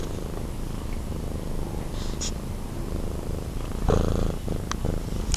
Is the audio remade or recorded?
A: recorded